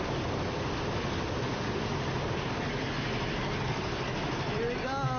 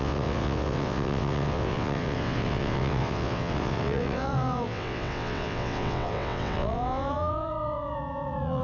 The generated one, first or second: second